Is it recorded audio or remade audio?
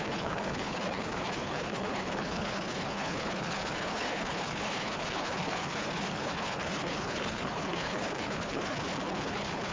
remade